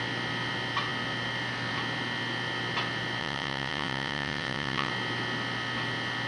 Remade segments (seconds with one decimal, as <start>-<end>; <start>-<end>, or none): 3.2-4.9